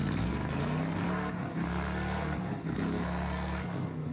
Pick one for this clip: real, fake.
fake